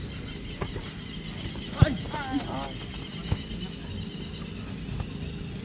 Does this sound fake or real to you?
real